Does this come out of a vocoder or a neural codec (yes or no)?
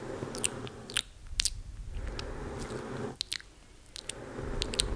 no